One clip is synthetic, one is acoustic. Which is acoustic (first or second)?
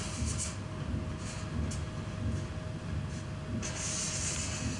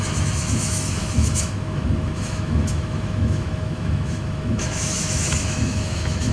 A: first